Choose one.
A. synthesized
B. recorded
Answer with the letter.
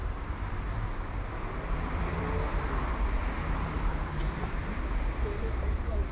A